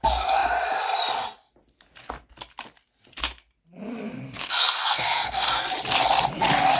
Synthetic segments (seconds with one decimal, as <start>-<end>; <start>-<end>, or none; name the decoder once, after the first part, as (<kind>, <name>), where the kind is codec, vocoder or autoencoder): 4.0-5.5 (codec, SNAC)